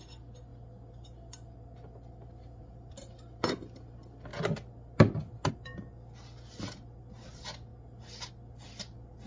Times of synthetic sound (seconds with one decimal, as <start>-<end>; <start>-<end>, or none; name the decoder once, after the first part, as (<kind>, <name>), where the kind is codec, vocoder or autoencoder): none